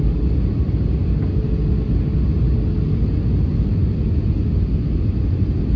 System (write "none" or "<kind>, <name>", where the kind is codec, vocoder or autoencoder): none